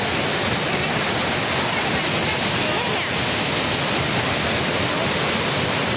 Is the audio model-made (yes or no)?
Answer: no